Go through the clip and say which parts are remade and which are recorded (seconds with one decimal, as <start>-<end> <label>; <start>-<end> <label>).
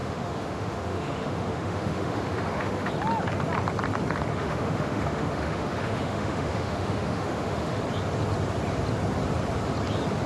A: 0.0-2.9 remade; 2.9-4.3 recorded; 4.3-7.8 remade; 7.8-10.3 recorded